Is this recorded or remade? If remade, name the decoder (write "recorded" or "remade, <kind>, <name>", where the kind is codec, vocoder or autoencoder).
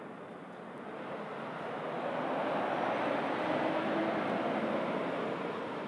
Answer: recorded